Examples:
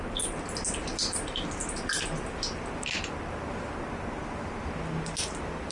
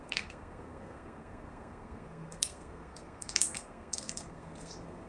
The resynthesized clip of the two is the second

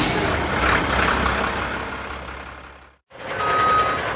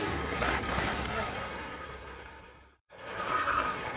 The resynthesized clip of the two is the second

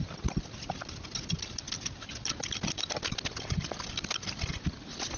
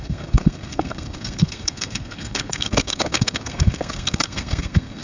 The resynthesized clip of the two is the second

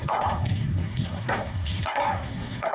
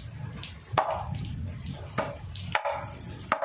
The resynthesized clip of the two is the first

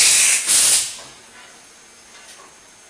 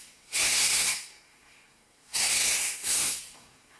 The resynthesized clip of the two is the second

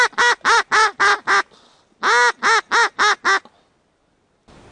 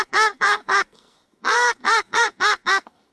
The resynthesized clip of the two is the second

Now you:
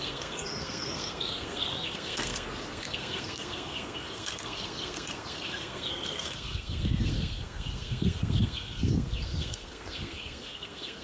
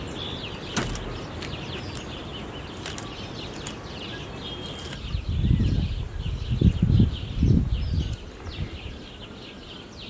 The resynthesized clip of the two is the first